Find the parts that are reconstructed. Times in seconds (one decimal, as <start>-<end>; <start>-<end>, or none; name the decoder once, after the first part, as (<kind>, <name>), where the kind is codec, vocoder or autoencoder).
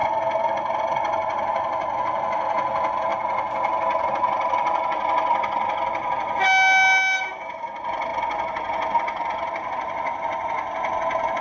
none